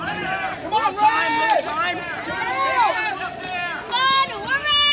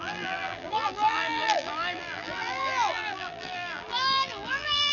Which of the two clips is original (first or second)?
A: first